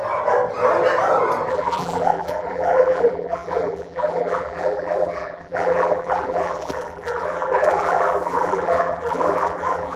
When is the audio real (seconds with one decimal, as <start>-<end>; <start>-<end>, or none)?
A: 0.0-1.5